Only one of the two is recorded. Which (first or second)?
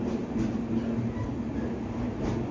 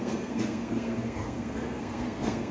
first